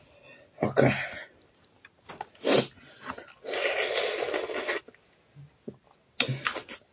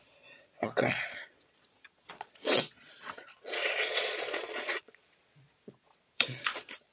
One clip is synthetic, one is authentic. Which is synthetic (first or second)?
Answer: second